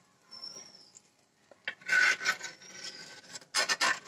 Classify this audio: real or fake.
real